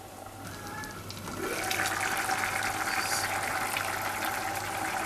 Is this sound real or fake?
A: real